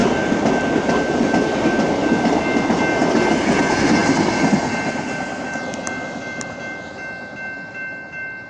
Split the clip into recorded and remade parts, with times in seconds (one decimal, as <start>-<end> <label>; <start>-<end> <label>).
0.0-8.5 recorded